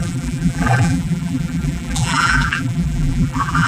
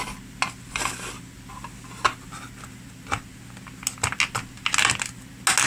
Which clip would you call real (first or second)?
second